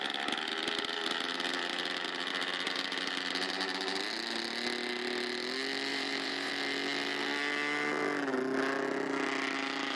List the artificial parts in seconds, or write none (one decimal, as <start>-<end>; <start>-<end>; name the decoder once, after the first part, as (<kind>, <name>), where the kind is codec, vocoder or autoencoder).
5.9-6.5 (vocoder, BigVGAN v2)